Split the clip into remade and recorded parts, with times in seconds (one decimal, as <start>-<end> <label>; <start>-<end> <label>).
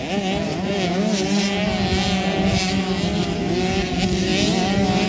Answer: 0.0-5.1 recorded